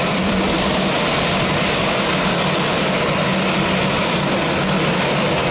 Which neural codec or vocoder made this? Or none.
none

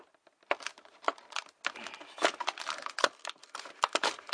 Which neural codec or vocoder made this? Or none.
none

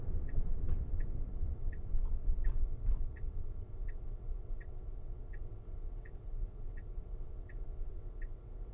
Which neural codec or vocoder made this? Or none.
vocoder, WaveNeXt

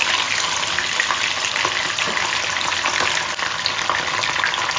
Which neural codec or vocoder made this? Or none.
none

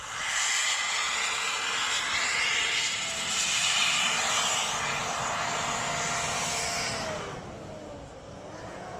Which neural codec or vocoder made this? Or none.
none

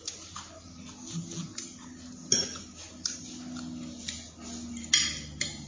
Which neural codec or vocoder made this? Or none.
none